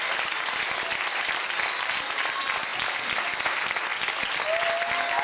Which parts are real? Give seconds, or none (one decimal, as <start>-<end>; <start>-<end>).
0.0-5.2